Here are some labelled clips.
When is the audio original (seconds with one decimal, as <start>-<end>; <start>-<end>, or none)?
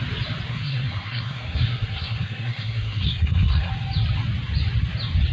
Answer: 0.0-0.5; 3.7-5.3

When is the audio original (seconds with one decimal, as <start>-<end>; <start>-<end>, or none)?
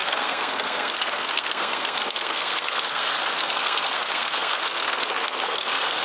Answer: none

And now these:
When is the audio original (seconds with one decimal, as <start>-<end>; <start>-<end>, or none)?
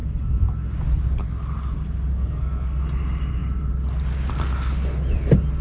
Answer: 0.0-2.1; 2.8-5.6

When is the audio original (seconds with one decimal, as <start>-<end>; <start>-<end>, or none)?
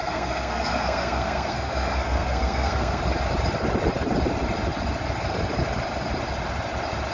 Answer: 3.0-7.1